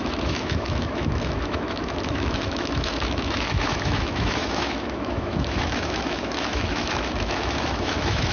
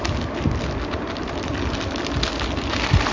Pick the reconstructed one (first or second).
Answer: first